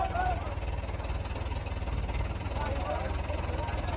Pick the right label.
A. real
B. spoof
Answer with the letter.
A